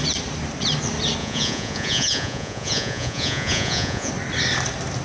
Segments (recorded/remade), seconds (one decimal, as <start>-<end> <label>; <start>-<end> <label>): 0.0-1.2 recorded; 1.2-4.1 remade; 4.1-5.0 recorded